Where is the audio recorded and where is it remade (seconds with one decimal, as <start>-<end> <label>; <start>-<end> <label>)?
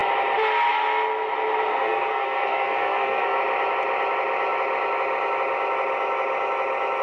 0.0-1.7 recorded; 1.7-3.4 remade; 3.4-7.0 recorded